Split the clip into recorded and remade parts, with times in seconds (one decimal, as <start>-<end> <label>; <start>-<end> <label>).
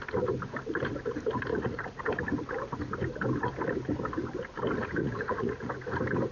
0.0-1.5 recorded; 1.5-2.0 remade; 2.0-5.0 recorded; 5.0-5.7 remade; 5.7-6.3 recorded